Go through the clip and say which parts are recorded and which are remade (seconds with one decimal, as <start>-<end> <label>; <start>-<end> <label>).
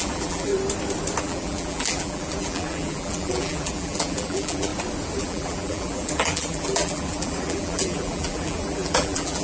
0.0-0.5 remade; 0.5-1.2 recorded; 1.2-4.7 remade; 4.7-5.2 recorded; 5.2-9.4 remade